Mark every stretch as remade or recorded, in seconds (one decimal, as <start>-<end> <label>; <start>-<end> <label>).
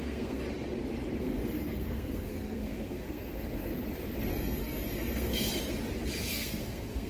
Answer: 0.0-0.4 remade; 0.4-1.2 recorded; 1.2-3.5 remade; 3.5-4.3 recorded; 4.3-5.5 remade; 5.5-6.3 recorded; 6.3-7.1 remade